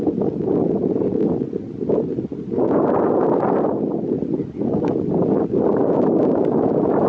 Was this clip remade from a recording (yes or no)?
no